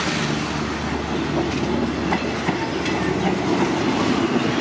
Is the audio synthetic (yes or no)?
no